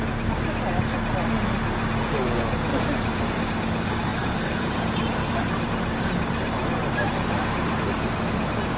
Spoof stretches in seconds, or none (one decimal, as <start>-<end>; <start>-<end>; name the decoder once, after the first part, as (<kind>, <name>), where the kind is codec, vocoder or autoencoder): 2.7-3.5 (vocoder, BigVGAN v2); 4.1-7.7